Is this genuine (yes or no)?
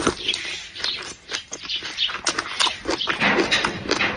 yes